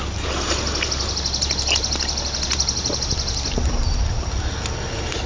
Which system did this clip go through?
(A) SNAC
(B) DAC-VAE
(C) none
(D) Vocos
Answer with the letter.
C